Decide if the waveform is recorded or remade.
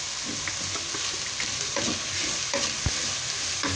recorded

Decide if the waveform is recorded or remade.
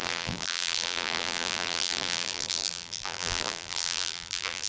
remade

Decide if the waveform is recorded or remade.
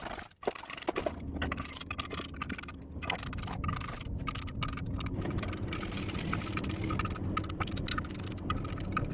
remade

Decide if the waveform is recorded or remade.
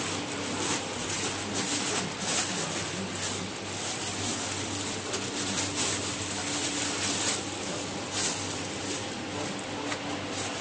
recorded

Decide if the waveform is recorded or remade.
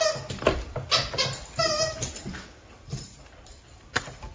recorded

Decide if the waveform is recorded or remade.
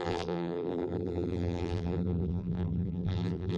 remade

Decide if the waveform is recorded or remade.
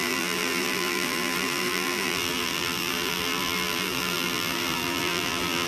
remade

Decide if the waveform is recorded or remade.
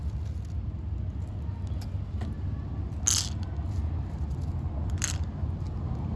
recorded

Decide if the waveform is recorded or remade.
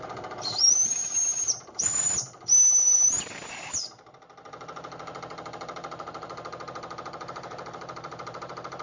remade